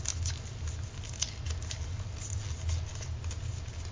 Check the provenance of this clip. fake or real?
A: real